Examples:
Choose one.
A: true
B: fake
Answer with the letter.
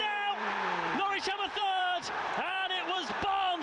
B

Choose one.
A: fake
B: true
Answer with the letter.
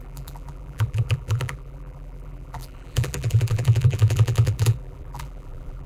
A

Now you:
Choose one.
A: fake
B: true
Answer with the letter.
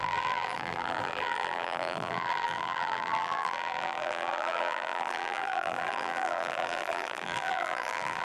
A